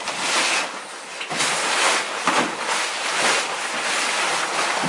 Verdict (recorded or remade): recorded